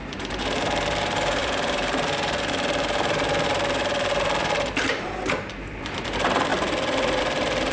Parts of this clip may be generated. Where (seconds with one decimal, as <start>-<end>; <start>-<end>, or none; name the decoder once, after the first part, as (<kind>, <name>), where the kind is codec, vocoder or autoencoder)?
0.0-7.7 (vocoder, BigVGAN v2)

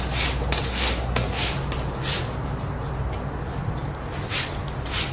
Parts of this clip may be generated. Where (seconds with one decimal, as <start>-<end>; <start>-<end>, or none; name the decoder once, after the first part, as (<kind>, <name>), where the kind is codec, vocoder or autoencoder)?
0.7-1.5 (codec, SNAC)

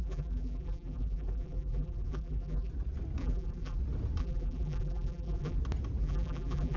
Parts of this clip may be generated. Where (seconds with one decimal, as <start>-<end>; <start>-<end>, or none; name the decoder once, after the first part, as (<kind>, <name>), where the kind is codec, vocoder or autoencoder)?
0.0-2.7 (vocoder, BigVGAN v2); 3.2-3.8; 4.2-5.6; 6.0-6.8

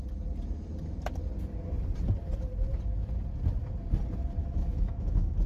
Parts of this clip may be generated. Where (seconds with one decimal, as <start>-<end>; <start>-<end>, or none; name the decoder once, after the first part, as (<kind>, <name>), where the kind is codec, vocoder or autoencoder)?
4.4-5.5 (autoencoder, DAC-VAE)

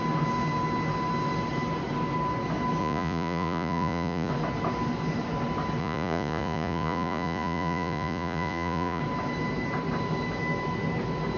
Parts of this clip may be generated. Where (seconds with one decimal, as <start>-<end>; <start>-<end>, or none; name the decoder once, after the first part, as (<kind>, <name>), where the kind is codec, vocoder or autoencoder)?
2.8-4.3 (vocoder, Vocos); 5.8-9.0

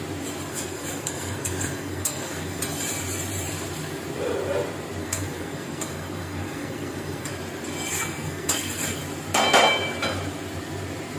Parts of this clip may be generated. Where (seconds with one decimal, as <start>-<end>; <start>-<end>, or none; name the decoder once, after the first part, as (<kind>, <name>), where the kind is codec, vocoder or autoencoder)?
0.5-2.6 (codec, SNAC); 5.0-7.3; 7.9-9.0

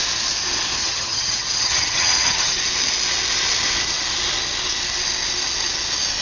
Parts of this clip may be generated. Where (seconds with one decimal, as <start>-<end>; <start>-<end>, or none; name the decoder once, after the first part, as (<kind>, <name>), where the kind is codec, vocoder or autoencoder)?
0.8-2.6 (vocoder, HiFi-GAN)